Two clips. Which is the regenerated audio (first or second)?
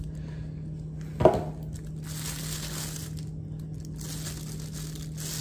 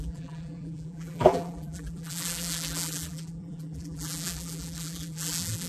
second